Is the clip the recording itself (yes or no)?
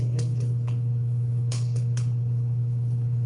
no